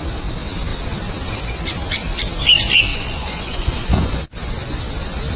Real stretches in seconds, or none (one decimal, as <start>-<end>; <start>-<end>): 0.0-2.9; 4.1-5.4

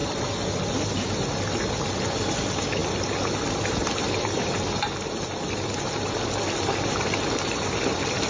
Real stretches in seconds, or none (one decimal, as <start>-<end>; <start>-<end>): 0.0-8.3

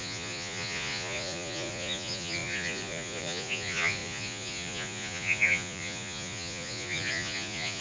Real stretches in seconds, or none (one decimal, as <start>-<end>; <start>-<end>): none

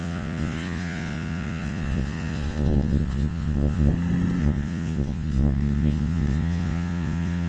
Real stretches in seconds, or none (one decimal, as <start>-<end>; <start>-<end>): 3.9-4.4

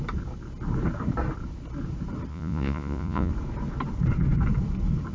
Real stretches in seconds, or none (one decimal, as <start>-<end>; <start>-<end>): 0.0-2.3; 3.3-5.1

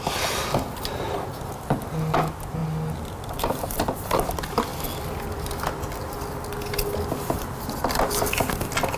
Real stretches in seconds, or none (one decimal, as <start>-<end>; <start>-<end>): 0.0-9.0